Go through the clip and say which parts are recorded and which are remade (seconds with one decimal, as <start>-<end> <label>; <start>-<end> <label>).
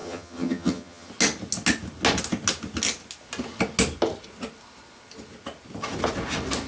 0.0-1.1 remade; 1.1-6.7 recorded